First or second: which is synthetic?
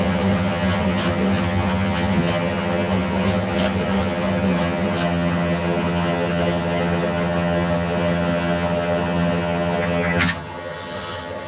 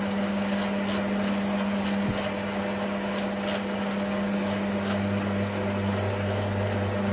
first